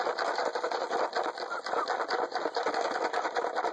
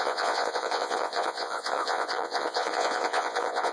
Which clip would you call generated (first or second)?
second